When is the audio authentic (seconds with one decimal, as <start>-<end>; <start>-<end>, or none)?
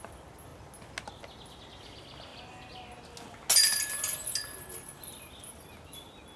0.0-6.4